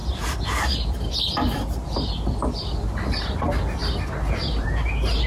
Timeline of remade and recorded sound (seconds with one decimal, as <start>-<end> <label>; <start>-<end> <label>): 0.0-5.3 recorded